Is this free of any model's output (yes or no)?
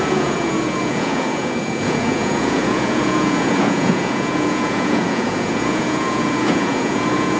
no